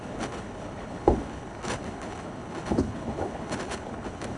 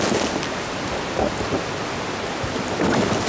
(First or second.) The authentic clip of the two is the second